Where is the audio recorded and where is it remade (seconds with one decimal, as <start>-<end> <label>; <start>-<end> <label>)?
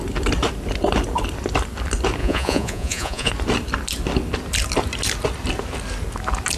0.0-2.2 recorded; 2.2-3.3 remade; 3.3-6.6 recorded